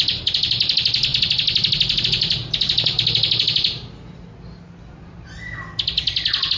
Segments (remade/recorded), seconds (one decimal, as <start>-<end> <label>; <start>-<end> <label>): 0.0-6.6 recorded